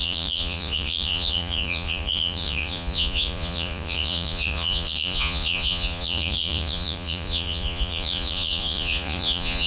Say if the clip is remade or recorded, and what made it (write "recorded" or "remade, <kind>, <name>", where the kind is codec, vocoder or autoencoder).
remade, vocoder, Vocos